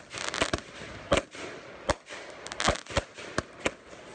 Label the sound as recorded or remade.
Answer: recorded